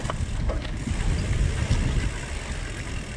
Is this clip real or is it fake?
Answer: real